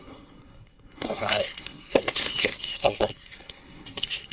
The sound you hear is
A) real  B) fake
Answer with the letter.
B